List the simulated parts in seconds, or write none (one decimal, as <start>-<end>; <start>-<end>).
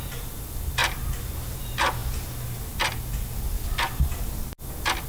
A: none